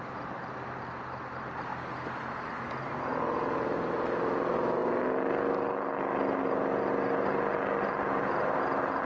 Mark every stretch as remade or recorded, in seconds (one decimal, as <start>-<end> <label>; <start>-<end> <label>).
0.0-9.1 recorded